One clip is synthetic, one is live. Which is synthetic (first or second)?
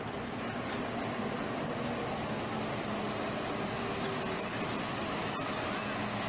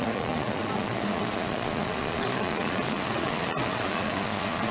second